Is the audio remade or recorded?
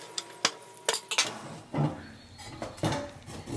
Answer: recorded